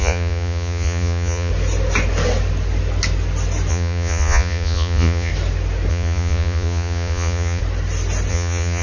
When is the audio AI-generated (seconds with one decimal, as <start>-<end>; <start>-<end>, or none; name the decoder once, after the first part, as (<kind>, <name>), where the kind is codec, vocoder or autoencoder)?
0.0-1.5 (vocoder, Vocos); 3.7-5.3; 5.9-7.6; 8.3-8.8